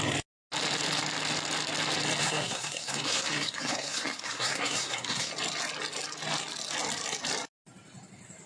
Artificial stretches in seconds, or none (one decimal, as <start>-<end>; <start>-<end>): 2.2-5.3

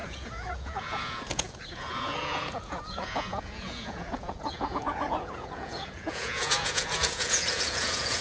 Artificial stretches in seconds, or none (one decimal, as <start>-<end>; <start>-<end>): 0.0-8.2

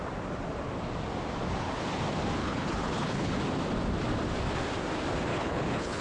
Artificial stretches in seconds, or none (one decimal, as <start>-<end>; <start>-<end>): 2.4-3.3; 5.3-6.0

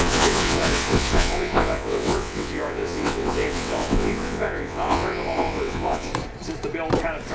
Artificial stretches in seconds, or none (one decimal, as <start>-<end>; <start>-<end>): 0.0-6.1

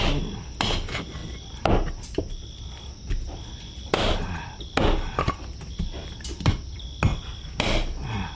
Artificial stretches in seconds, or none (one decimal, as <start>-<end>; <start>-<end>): none

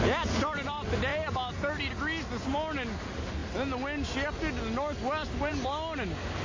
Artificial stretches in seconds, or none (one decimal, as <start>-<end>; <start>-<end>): none

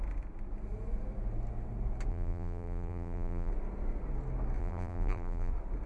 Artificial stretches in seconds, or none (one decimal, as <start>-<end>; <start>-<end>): 2.1-3.5; 4.6-5.5

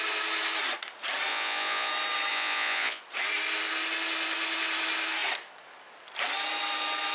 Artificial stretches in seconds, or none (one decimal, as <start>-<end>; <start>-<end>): 1.3-1.9; 2.3-3.0